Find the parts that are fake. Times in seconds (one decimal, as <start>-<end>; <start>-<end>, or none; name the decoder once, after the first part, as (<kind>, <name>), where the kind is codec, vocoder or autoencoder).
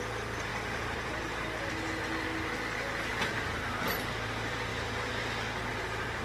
0.5-1.6 (vocoder, BigVGAN v2); 3.1-4.1